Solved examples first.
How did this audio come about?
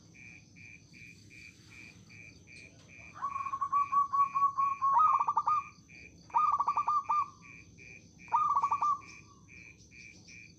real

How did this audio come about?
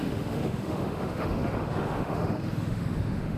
fake